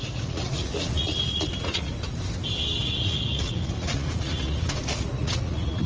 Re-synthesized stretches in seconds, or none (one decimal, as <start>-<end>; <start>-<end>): 0.0-1.9; 2.8-5.9